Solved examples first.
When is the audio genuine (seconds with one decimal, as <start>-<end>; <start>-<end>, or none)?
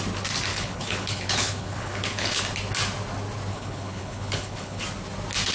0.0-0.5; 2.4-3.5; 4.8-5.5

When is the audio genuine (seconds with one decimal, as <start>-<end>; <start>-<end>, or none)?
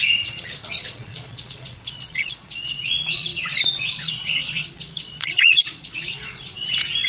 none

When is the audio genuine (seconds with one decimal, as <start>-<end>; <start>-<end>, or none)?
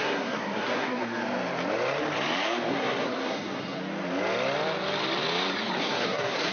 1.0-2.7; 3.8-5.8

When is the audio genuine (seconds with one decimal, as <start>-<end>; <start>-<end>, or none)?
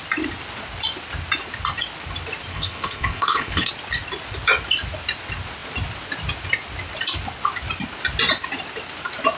0.0-2.5; 3.7-9.4